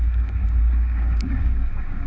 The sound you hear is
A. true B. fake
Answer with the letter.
B